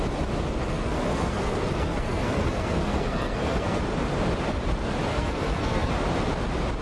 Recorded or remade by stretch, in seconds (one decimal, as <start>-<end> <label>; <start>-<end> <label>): 0.0-0.6 recorded; 0.6-3.8 remade; 3.8-5.1 recorded; 5.1-5.9 remade; 5.9-6.8 recorded